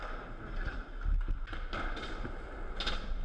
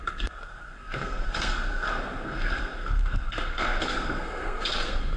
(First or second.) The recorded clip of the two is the first